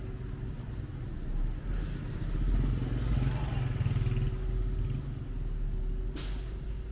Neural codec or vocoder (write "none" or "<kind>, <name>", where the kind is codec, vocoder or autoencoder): none